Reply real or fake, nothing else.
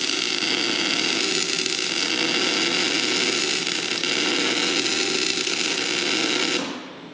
real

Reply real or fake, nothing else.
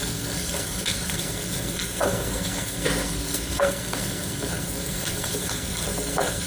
fake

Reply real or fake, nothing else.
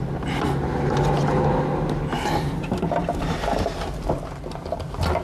real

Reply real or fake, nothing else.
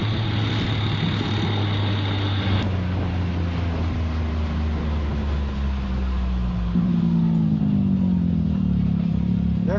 real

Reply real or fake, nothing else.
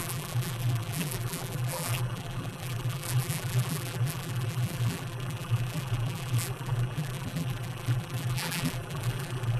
fake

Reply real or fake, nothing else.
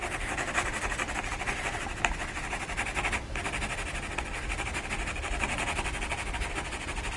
real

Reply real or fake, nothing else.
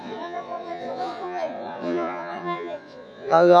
fake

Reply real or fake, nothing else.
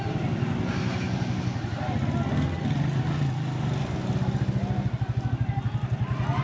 real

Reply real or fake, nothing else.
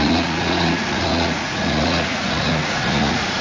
fake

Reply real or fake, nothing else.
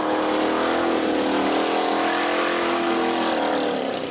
real